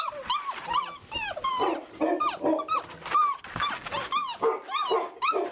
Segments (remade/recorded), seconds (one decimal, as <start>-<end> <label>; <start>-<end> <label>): 0.0-5.5 recorded